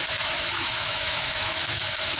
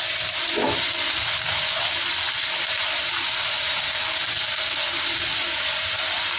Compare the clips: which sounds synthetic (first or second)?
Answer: first